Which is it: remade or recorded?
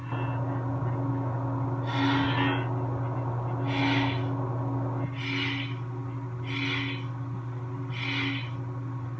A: recorded